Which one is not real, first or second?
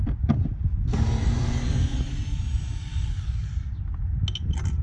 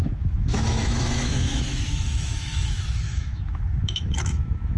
second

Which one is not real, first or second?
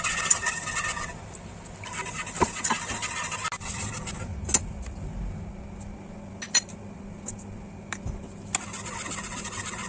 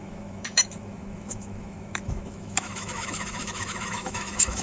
second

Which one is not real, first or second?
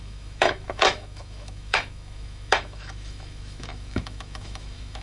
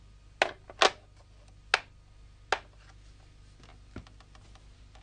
first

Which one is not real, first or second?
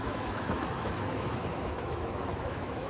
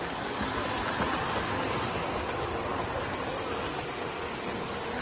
first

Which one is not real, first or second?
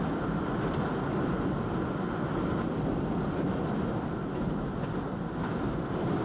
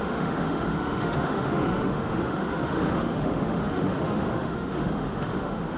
second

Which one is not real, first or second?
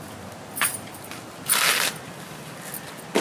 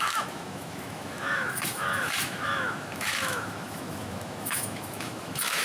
second